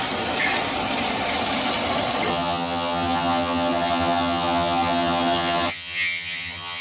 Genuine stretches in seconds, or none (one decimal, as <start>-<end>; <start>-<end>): 0.0-2.3